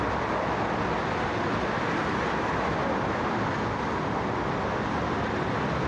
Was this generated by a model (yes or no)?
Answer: no